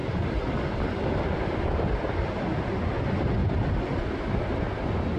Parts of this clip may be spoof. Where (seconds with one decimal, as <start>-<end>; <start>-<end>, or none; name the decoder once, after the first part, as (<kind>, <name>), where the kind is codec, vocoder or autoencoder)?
0.0-3.0 (vocoder, BigVGAN v2)